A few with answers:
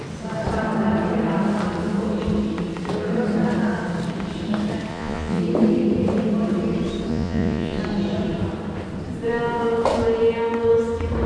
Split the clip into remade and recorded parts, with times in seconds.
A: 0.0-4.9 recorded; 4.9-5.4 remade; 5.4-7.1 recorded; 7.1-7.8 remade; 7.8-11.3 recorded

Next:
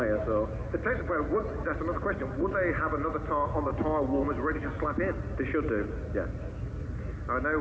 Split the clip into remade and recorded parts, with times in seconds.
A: 0.0-7.6 recorded

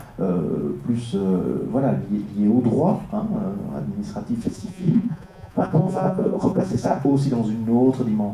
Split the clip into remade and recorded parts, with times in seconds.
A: 0.0-4.4 recorded; 4.4-7.0 remade; 7.0-8.3 recorded

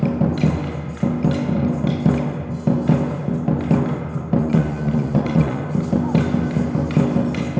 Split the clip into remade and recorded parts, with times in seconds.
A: 0.0-4.4 recorded; 4.4-5.6 remade; 5.6-7.6 recorded

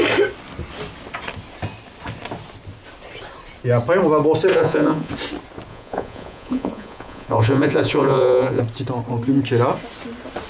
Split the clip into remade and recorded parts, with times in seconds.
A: 0.0-4.5 recorded; 4.5-5.1 remade; 5.1-5.7 recorded; 5.7-8.6 remade; 8.6-10.5 recorded

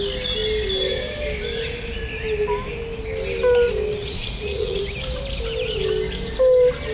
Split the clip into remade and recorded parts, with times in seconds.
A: 0.0-4.0 recorded; 4.0-4.8 remade; 4.8-6.9 recorded

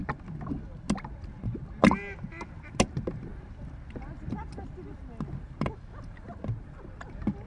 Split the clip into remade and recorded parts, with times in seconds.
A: 0.0-7.5 recorded

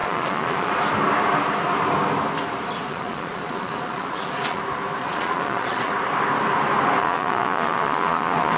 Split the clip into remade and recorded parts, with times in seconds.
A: 0.0-0.7 remade; 0.7-2.9 recorded; 2.9-4.6 remade; 4.6-5.0 recorded; 5.0-5.9 remade; 5.9-7.0 recorded; 7.0-8.6 remade